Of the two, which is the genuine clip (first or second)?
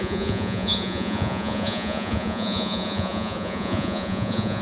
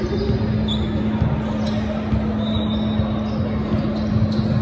second